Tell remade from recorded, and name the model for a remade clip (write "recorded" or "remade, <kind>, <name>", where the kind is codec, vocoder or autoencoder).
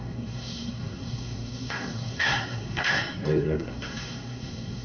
remade, codec, SNAC